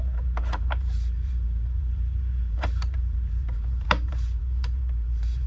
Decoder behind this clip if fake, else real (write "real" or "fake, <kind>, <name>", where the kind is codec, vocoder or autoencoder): fake, vocoder, BigVGAN v2